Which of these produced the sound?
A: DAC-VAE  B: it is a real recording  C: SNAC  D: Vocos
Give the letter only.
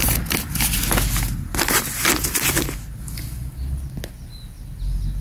B